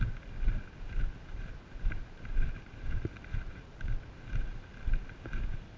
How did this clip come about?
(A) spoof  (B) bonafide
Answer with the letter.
B